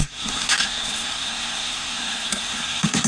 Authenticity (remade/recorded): remade